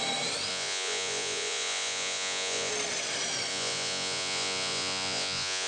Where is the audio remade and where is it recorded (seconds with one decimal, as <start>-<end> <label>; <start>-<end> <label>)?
0.0-0.5 recorded; 0.5-2.7 remade; 2.7-3.5 recorded; 3.5-5.7 remade